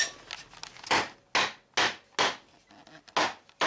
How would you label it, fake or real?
real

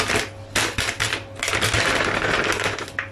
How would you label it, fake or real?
real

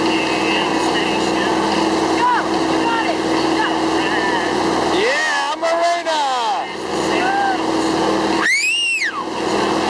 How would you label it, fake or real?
real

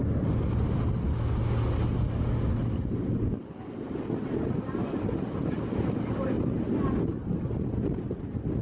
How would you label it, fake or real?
real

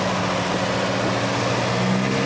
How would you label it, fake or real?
real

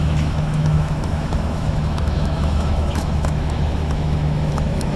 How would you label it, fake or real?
fake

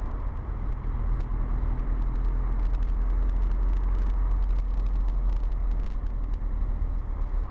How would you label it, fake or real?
real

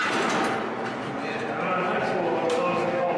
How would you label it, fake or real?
real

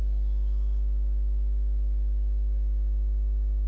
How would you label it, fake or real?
real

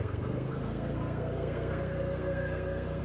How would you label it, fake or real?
fake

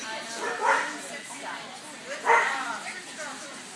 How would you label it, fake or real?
fake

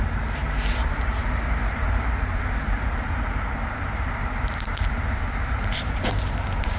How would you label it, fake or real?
fake